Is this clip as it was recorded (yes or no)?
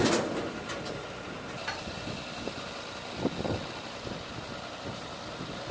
yes